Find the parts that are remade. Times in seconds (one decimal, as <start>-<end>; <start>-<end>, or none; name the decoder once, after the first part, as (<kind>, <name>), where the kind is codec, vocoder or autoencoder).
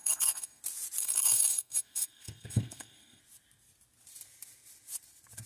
0.0-0.6 (codec, SNAC); 1.0-3.2